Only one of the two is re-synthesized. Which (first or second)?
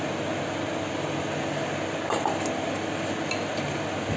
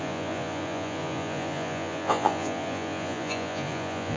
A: second